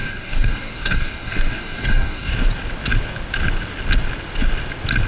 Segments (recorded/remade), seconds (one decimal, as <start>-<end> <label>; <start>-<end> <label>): 0.0-2.3 remade; 2.3-5.1 recorded